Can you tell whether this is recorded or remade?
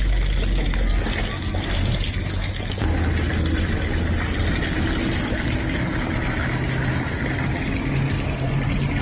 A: recorded